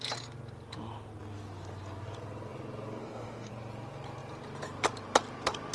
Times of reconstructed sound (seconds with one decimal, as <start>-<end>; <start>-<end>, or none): 3.0-3.5